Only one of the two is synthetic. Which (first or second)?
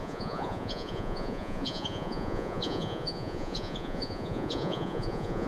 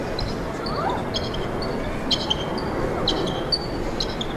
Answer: first